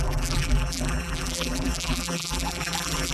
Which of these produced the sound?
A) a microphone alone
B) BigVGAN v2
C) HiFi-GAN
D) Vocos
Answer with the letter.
B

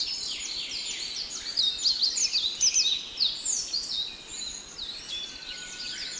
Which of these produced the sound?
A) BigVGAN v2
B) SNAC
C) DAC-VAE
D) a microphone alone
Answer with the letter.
D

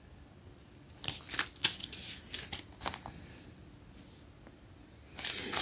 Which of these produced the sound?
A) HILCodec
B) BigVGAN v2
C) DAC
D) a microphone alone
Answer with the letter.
D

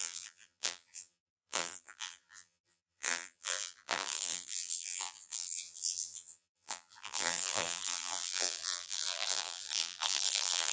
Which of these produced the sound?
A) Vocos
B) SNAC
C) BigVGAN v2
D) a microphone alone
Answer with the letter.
C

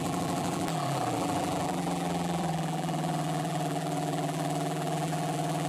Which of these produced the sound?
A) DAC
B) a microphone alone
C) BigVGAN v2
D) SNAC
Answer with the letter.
C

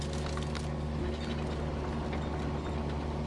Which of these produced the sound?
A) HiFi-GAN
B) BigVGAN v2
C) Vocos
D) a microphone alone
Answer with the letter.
D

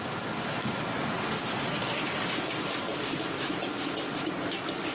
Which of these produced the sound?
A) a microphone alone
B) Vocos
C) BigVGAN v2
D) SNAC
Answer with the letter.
A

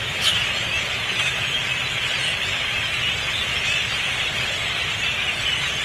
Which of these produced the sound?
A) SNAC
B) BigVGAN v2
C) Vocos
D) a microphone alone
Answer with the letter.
B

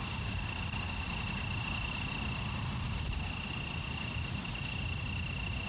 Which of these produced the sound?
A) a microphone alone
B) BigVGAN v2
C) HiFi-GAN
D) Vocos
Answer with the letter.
A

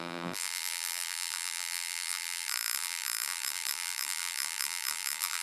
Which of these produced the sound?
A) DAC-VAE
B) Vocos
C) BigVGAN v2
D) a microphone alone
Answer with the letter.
C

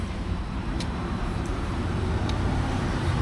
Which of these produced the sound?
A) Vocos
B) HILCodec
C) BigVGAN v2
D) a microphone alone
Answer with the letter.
C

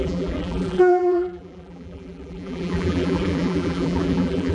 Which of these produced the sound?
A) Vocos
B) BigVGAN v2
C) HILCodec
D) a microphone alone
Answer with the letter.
B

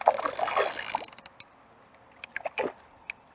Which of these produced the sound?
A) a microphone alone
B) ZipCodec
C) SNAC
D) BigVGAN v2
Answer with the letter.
A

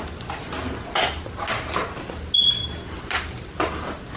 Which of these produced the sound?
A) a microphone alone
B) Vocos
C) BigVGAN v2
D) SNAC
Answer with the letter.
A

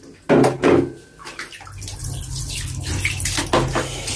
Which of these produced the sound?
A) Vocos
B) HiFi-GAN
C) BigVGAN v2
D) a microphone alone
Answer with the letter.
D